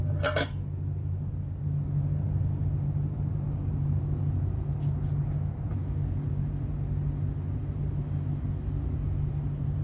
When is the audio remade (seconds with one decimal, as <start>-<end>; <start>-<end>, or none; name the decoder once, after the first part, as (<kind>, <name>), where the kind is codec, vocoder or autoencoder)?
none